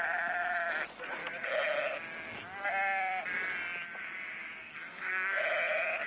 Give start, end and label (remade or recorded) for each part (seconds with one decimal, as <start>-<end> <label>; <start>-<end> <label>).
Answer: 0.0-4.6 recorded; 4.6-5.4 remade; 5.4-6.1 recorded